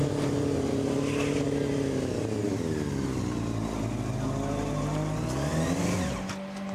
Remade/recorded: recorded